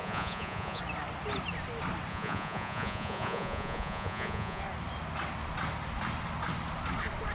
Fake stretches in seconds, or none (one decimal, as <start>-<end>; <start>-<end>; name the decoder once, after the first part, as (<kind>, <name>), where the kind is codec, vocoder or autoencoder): 0.0-0.8 (vocoder, Vocos); 2.1-4.6